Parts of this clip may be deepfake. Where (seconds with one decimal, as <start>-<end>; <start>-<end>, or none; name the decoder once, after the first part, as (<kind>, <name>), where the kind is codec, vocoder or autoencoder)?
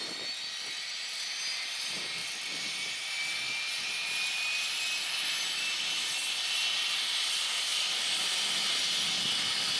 2.2-3.1 (vocoder, BigVGAN v2); 7.7-8.9